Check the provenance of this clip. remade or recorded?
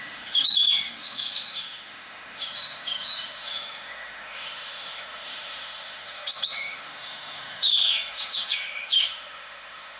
remade